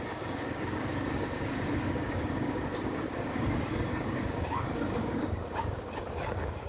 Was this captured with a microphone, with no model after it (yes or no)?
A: no